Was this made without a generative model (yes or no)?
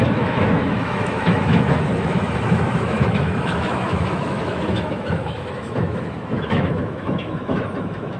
no